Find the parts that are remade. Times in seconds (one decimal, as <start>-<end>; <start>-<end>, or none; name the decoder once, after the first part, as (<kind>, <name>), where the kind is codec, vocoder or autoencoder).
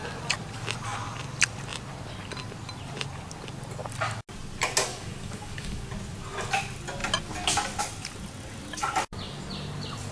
4.9-5.8 (codec, DAC)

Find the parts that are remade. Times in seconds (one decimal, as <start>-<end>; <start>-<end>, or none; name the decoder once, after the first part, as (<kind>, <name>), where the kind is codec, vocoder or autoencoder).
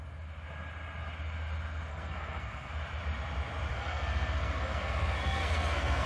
1.9-2.7 (codec, SNAC); 3.7-6.1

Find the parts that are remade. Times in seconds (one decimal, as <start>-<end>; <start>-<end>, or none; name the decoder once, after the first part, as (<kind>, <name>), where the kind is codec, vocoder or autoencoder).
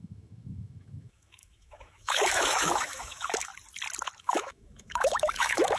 0.0-3.5 (autoencoder, DAC-VAE); 4.2-5.8